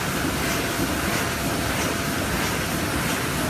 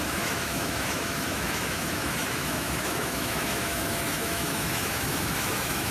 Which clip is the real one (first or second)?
first